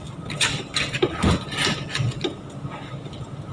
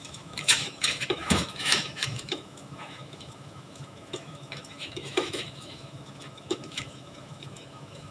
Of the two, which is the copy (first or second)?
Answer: second